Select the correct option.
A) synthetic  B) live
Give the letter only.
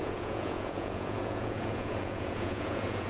A